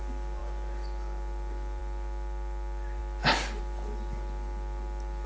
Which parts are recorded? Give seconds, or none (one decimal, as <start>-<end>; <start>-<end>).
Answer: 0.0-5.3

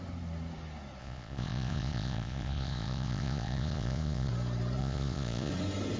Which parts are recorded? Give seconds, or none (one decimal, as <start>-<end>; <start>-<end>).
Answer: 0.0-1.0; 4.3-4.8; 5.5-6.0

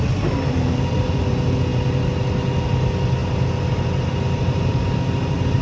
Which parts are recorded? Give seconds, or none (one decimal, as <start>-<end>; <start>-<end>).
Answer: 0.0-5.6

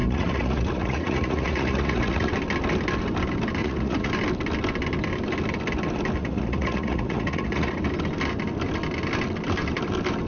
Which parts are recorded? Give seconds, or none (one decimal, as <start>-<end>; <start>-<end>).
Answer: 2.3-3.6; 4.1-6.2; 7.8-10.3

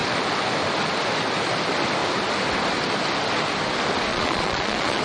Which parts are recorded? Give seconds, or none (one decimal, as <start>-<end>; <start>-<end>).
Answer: 0.0-4.1

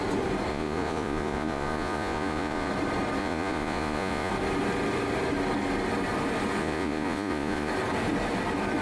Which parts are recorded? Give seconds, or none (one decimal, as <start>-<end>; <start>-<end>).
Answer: 0.0-0.5; 2.7-3.2; 4.3-6.6; 7.7-8.8

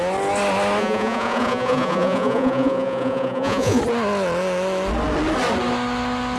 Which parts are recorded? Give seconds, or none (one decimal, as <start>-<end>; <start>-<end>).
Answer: 0.0-0.8; 3.8-6.4

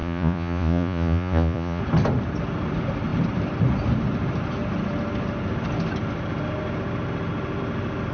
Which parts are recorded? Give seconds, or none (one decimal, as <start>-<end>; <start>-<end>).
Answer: 1.8-8.1